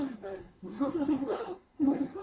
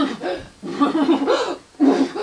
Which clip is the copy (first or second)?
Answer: first